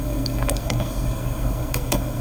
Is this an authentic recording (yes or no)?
no